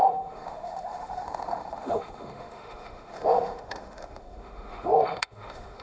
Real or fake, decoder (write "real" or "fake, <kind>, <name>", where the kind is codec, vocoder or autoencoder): fake, autoencoder, DAC-VAE